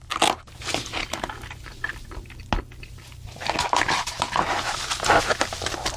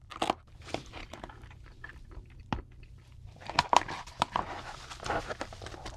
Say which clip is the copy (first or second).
second